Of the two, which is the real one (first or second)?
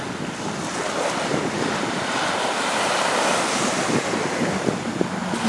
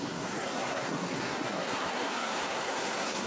first